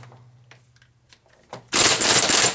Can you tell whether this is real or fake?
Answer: real